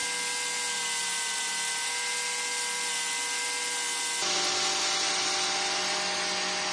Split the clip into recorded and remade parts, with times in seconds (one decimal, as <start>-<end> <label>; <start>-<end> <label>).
0.0-6.7 recorded